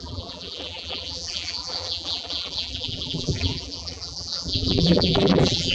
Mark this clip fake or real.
fake